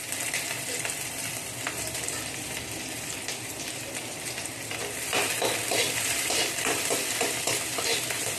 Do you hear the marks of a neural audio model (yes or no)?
yes